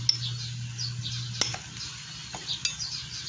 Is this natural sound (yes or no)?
yes